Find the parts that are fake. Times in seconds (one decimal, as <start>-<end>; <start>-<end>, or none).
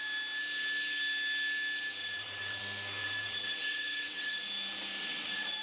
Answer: 2.0-2.6; 3.0-4.5; 5.0-5.6